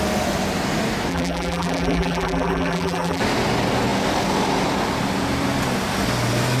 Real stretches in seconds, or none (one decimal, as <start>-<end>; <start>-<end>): 0.0-1.1; 3.2-6.6